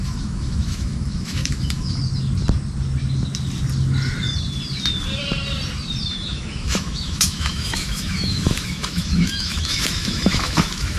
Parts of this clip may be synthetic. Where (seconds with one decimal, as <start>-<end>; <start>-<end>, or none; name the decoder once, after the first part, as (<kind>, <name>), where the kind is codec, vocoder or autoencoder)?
0.0-2.0 (autoencoder, DAC-VAE); 6.1-11.0